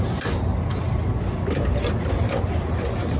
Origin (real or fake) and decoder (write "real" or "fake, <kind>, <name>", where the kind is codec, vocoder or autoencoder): real